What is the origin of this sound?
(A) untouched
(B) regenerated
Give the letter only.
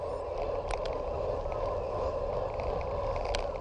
A